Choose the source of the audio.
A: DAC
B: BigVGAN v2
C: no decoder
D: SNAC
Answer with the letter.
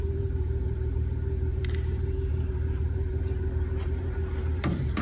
B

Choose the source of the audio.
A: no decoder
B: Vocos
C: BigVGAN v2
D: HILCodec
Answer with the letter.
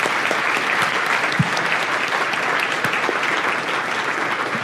A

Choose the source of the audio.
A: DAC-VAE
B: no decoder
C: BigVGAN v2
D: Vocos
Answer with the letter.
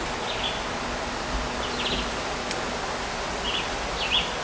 B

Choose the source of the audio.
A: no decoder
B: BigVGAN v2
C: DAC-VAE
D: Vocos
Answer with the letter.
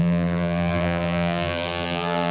B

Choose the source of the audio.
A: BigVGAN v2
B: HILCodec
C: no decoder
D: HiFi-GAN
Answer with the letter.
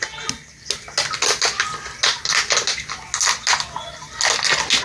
C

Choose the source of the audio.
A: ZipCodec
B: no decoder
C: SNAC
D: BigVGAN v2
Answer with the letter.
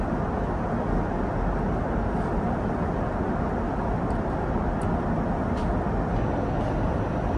B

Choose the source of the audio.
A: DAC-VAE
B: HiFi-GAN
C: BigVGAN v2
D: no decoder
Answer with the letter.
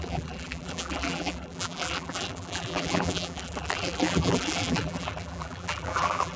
C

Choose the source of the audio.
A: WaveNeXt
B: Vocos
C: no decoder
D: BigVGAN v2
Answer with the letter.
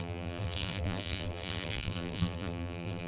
D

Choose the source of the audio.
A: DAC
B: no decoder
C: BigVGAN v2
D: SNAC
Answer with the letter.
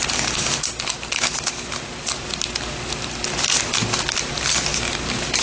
B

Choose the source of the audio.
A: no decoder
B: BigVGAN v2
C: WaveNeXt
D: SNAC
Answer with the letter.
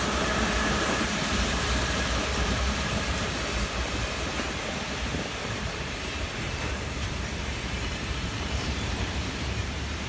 B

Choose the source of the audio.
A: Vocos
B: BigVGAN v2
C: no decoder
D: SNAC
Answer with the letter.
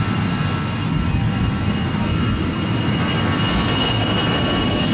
B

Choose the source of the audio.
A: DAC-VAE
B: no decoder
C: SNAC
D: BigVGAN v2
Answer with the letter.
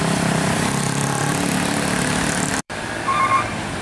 D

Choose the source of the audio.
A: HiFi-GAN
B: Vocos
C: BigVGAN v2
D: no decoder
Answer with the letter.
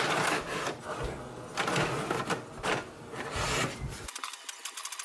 D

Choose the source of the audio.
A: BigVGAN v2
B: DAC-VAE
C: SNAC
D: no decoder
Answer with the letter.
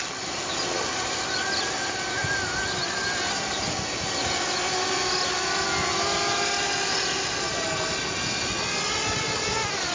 D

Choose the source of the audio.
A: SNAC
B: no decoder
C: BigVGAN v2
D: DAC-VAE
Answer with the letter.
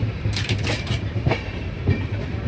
C